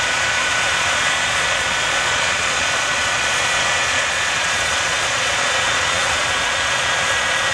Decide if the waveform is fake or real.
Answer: fake